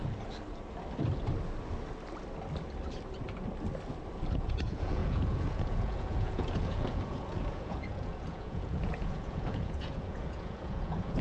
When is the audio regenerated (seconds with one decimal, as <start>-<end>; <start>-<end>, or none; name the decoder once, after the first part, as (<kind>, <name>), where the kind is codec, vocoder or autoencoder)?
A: 4.3-11.2 (vocoder, Vocos)

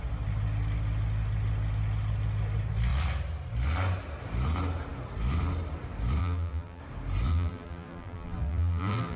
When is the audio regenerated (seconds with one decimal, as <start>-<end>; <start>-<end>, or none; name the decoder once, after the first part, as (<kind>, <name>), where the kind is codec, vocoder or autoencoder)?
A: 6.2-6.8 (vocoder, BigVGAN v2); 7.3-9.2

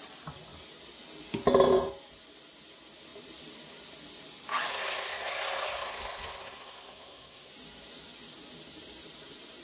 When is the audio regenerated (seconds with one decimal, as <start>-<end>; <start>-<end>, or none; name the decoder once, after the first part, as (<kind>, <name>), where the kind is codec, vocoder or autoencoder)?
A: 4.7-7.5 (codec, SNAC)

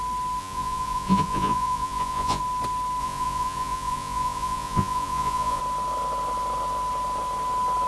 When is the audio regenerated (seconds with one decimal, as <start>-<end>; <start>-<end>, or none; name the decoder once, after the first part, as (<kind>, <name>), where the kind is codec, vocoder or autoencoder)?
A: 0.4-2.4 (vocoder, Vocos); 3.0-5.6

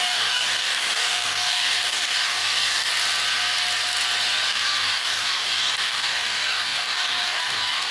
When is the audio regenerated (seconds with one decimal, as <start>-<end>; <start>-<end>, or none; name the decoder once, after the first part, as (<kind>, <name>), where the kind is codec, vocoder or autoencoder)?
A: 0.0-2.9 (codec, DAC); 4.5-7.9

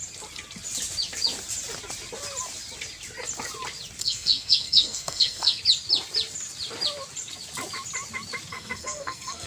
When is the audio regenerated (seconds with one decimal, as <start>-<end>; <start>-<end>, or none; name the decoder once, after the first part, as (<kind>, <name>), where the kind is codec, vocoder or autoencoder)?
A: 4.0-5.6 (codec, SNAC); 8.5-9.5